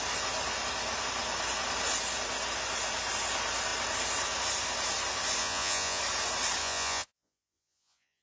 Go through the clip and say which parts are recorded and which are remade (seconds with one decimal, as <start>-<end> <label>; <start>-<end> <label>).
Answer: 0.0-5.4 recorded; 5.4-6.0 remade; 6.0-6.6 recorded; 6.6-8.2 remade